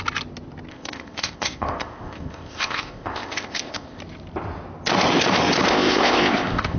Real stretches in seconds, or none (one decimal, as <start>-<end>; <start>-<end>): 0.0-0.7; 4.0-5.7